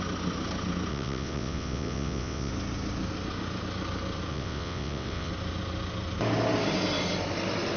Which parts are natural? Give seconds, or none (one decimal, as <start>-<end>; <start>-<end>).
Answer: 0.0-0.9; 2.5-4.3; 5.3-7.8